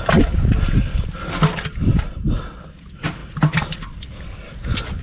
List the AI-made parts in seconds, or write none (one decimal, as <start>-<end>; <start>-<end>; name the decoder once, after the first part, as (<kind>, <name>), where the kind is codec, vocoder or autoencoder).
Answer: none